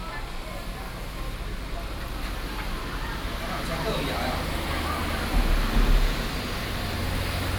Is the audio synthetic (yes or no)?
no